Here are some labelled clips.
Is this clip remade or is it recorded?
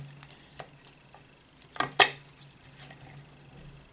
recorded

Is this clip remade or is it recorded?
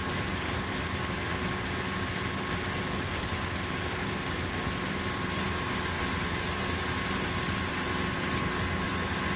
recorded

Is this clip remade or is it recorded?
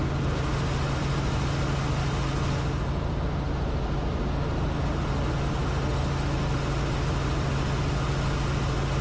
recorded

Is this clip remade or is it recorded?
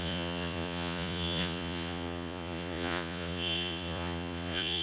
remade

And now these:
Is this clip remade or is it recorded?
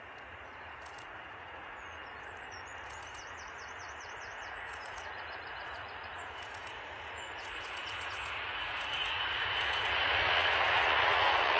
remade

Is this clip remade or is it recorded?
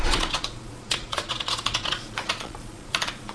remade